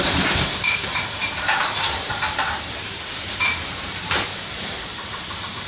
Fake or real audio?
fake